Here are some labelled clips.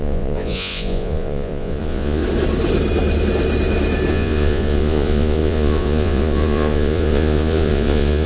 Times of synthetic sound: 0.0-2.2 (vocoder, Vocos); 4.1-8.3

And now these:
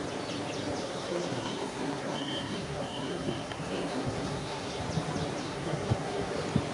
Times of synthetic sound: 0.8-4.8 (codec, SNAC); 5.4-6.3

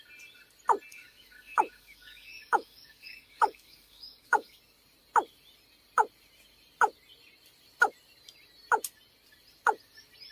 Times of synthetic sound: 0.9-4.6 (codec, DAC)